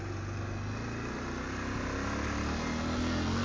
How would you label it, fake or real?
real